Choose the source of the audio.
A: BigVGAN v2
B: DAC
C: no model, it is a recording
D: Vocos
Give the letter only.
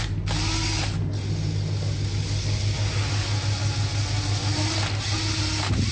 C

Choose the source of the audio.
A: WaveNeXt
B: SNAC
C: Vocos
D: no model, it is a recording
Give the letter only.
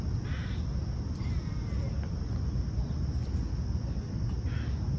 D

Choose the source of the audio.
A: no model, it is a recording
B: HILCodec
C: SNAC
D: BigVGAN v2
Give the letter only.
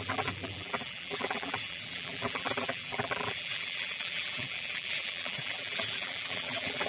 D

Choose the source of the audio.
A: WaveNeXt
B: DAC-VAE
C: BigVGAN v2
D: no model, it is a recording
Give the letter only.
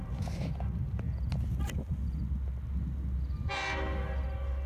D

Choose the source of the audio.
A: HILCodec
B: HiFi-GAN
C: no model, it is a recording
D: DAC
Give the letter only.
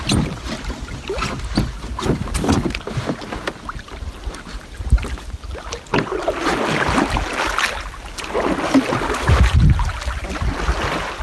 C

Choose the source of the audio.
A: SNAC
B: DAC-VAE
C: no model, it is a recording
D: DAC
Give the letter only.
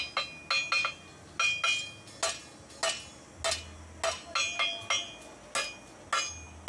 C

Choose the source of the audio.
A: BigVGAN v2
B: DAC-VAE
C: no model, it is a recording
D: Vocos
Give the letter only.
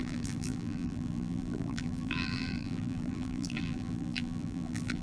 A